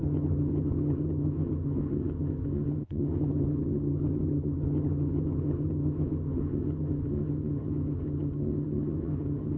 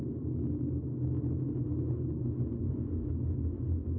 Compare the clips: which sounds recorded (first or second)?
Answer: second